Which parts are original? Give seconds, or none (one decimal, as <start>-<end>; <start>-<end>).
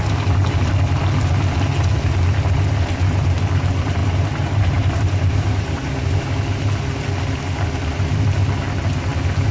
0.0-4.0; 6.3-9.5